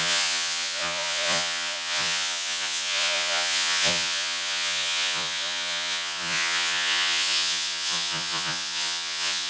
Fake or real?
fake